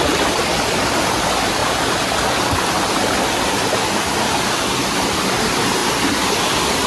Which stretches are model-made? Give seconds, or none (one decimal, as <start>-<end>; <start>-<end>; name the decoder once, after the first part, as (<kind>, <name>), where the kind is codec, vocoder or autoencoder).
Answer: none